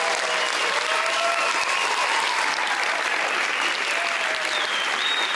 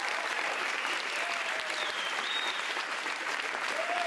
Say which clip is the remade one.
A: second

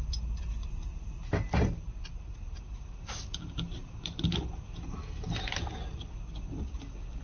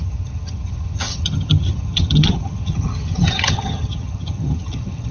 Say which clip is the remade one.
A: second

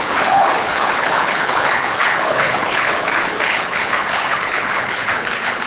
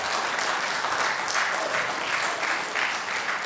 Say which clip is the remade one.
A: first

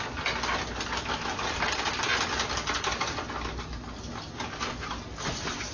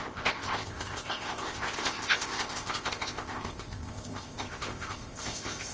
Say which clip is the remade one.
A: second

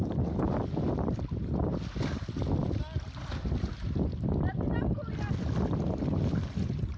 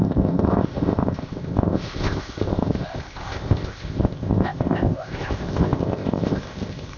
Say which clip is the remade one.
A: second